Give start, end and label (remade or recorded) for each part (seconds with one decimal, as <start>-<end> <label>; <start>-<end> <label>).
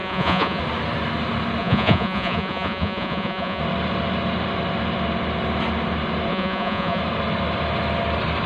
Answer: 0.0-0.6 remade; 0.6-1.6 recorded; 1.6-3.6 remade; 3.6-6.3 recorded; 6.3-7.0 remade; 7.0-8.5 recorded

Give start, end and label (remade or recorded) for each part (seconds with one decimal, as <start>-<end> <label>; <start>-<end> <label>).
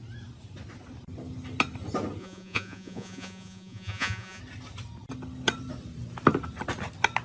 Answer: 0.0-2.2 recorded; 2.2-4.4 remade; 4.4-7.2 recorded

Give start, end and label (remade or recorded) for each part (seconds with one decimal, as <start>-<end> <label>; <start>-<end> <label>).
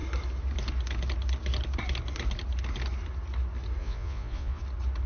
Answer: 0.0-3.8 recorded; 3.8-4.6 remade; 4.6-5.1 recorded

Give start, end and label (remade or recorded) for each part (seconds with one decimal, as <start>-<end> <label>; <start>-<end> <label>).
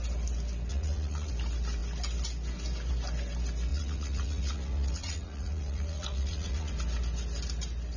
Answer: 0.0-0.7 recorded; 0.7-1.3 remade; 1.3-3.7 recorded; 3.7-6.7 remade; 6.7-8.0 recorded